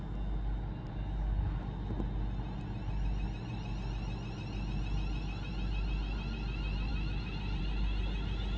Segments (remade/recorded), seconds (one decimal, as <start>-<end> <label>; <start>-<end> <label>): 0.0-8.6 recorded